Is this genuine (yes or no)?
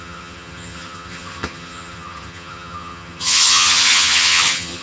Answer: no